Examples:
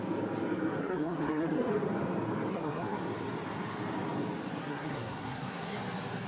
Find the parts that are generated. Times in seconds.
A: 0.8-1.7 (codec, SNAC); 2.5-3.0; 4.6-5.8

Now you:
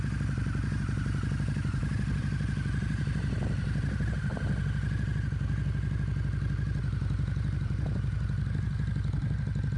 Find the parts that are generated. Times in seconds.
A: 6.8-8.2 (vocoder, BigVGAN v2)

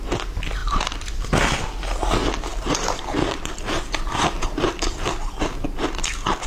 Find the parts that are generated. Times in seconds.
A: 0.6-1.2 (vocoder, BigVGAN v2); 2.5-5.4

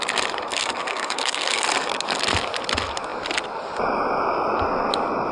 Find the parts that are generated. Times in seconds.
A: 0.5-1.6 (codec, SNAC)

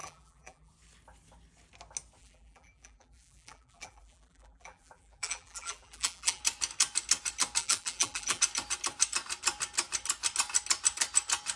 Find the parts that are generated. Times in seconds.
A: 0.0-0.7 (vocoder, BigVGAN v2); 2.2-6.4; 7.6-8.4